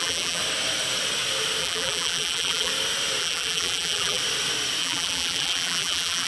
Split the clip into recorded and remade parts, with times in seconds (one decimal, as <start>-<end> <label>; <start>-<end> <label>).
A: 0.0-0.4 remade; 0.4-1.6 recorded; 1.6-2.7 remade; 2.7-3.2 recorded; 3.2-4.2 remade; 4.2-4.8 recorded; 4.8-6.3 remade